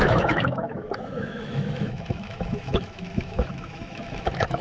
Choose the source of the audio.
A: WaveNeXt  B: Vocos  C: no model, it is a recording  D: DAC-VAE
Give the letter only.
D